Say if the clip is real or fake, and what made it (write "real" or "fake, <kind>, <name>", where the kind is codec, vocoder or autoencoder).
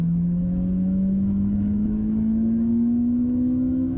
fake, autoencoder, DAC-VAE